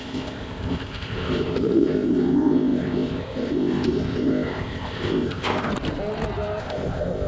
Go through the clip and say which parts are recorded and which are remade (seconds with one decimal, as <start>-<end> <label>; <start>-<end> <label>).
0.0-5.7 remade; 5.7-6.6 recorded; 6.6-7.3 remade